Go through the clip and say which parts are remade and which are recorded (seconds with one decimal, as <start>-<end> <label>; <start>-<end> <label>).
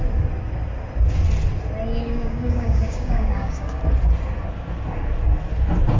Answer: 0.0-2.0 recorded; 2.0-3.8 remade; 3.8-6.0 recorded